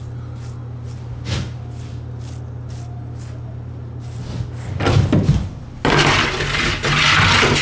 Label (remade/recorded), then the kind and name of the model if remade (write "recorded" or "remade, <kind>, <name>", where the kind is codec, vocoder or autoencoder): recorded